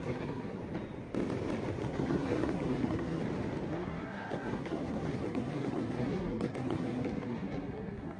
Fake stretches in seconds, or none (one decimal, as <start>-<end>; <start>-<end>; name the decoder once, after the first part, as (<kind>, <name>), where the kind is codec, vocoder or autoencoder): 0.0-0.6 (codec, SNAC); 1.7-3.2; 3.7-8.2